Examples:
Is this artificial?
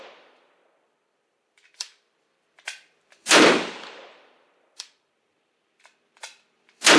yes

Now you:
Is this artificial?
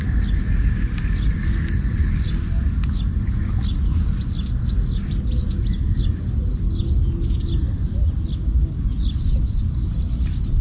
no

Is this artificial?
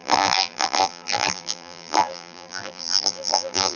yes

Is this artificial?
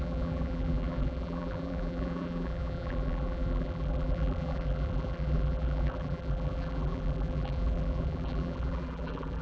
yes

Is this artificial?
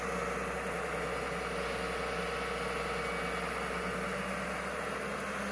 no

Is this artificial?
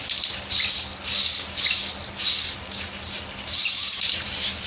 no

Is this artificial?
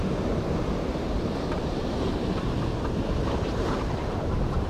yes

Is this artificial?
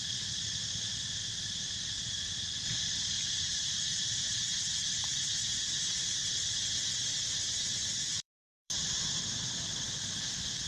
yes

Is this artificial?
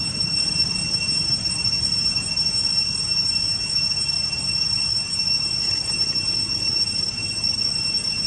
no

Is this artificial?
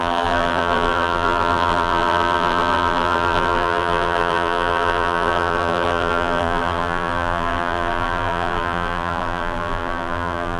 yes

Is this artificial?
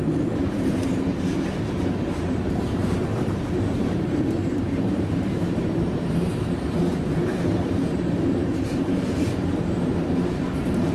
yes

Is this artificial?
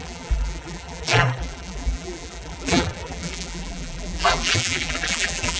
yes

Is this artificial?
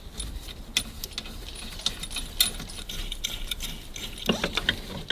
no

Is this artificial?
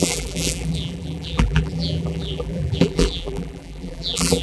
yes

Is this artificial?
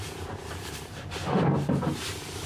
yes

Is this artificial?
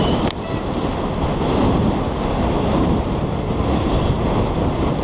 no